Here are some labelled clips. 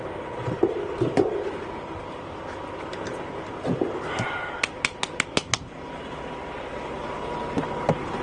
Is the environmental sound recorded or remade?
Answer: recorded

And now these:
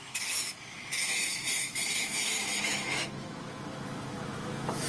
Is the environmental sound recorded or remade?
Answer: remade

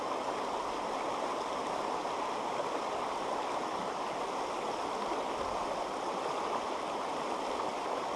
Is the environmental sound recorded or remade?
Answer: recorded